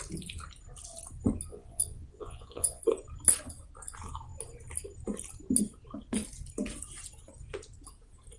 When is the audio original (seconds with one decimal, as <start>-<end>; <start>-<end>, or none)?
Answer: 0.0-1.5; 2.8-8.4